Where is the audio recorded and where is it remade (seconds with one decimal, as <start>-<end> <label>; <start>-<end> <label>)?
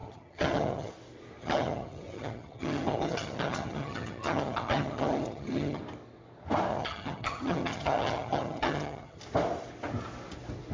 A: 0.0-0.9 remade; 0.9-1.4 recorded; 1.4-5.8 remade; 5.8-6.7 recorded; 6.7-9.2 remade; 9.2-10.7 recorded